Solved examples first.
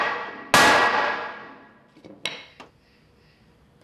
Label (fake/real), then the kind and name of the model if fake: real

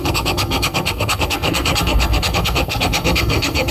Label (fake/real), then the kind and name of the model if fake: fake, codec, SNAC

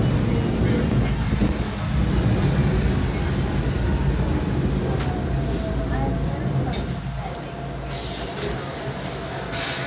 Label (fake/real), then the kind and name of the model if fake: real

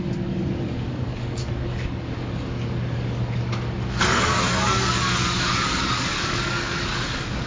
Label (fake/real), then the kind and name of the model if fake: fake, codec, DAC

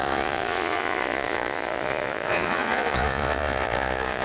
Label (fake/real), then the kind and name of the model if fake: fake, vocoder, Vocos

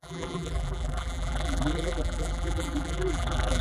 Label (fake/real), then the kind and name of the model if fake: fake, vocoder, BigVGAN v2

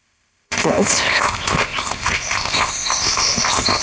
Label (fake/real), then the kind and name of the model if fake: fake, codec, ZipCodec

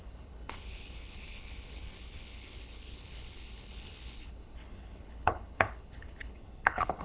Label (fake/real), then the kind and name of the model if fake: fake, codec, HILCodec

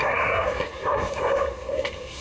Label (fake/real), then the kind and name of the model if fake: fake, codec, SNAC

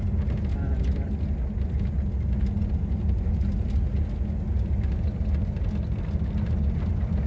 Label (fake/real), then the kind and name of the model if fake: real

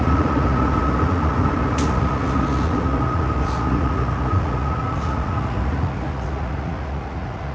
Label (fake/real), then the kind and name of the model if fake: fake, vocoder, Vocos